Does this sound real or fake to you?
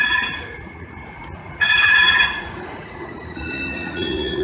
fake